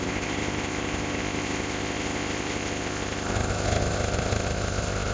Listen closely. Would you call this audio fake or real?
fake